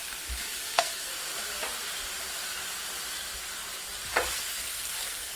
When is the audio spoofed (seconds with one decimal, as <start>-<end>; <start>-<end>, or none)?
0.0-1.1; 4.3-5.4